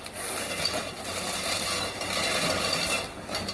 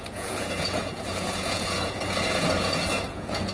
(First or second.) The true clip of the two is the first